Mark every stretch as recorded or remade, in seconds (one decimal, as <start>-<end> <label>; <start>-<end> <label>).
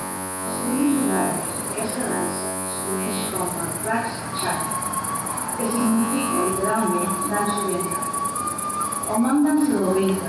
0.0-1.3 remade; 1.3-2.1 recorded; 2.1-3.3 remade; 3.3-5.8 recorded; 5.8-6.5 remade; 6.5-10.3 recorded